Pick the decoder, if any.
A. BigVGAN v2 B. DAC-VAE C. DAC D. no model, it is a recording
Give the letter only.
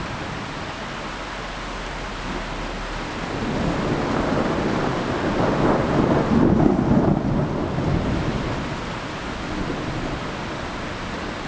D